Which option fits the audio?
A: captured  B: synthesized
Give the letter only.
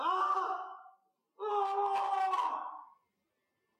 A